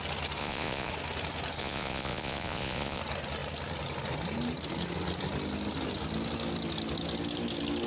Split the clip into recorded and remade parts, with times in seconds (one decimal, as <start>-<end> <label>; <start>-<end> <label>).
0.0-0.4 recorded; 0.4-0.9 remade; 0.9-1.6 recorded; 1.6-3.0 remade; 3.0-7.9 recorded